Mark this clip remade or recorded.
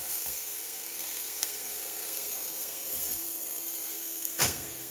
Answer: remade